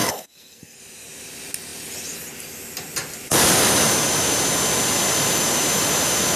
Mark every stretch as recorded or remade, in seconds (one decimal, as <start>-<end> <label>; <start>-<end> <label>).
0.0-0.8 remade; 0.8-6.4 recorded